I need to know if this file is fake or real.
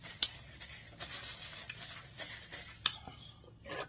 real